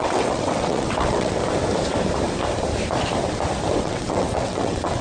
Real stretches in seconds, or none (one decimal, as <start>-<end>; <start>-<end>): 1.4-3.8